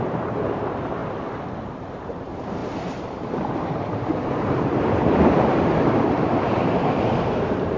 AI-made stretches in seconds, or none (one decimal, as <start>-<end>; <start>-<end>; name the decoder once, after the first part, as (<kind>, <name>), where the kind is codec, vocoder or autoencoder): 0.0-1.0 (vocoder, BigVGAN v2); 1.7-7.8